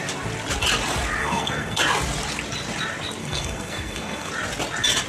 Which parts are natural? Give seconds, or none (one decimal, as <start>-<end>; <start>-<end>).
0.0-1.2; 1.8-3.2; 4.3-5.1